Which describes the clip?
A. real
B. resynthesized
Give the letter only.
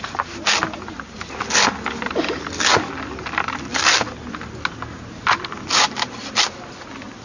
A